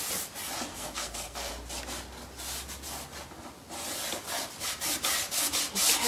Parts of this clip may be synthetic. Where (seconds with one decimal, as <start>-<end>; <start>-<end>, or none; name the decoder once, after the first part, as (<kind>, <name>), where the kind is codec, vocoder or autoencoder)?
0.7-1.5 (codec, SNAC)